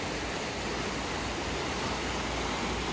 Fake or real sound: real